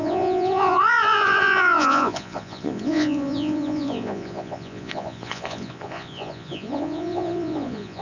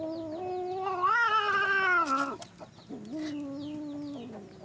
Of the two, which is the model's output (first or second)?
first